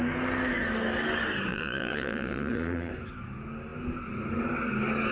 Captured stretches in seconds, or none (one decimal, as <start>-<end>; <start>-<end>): 0.0-1.5; 2.9-5.1